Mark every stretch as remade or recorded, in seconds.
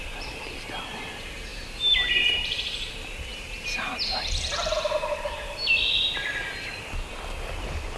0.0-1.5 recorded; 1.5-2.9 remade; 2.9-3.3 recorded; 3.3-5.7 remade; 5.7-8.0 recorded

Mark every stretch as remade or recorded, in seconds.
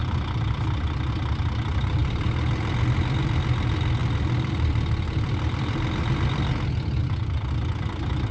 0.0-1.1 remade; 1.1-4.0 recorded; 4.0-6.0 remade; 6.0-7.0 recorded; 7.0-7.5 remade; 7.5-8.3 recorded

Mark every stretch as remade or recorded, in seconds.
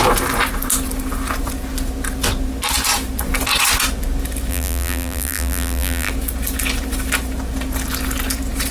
0.0-4.5 recorded; 4.5-6.1 remade; 6.1-8.7 recorded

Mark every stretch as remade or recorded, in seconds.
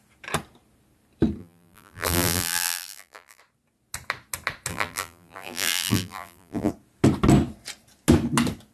0.0-1.4 recorded; 1.4-3.4 remade; 3.4-4.7 recorded; 4.7-6.7 remade; 6.7-8.7 recorded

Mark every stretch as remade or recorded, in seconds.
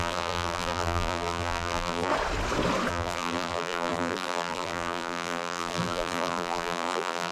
0.0-2.1 remade; 2.1-2.9 recorded; 2.9-7.3 remade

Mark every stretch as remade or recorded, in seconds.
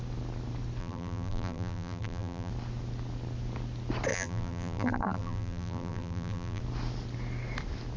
0.0-0.8 recorded; 0.8-2.5 remade; 2.5-4.1 recorded; 4.1-6.6 remade; 6.6-8.0 recorded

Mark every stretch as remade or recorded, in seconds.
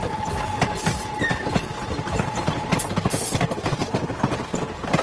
0.0-3.8 recorded; 3.8-5.0 remade